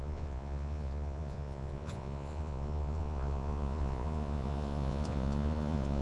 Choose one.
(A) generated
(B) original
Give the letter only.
A